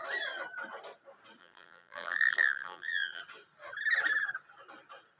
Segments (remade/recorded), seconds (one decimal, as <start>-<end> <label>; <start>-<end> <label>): 0.0-1.4 recorded; 1.4-3.2 remade; 3.2-5.2 recorded